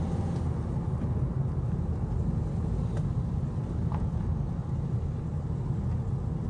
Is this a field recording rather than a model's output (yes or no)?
yes